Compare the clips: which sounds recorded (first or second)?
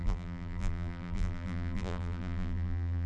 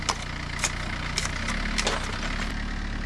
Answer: second